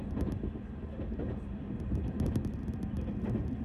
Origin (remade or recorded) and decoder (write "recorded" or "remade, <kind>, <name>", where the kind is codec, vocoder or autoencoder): recorded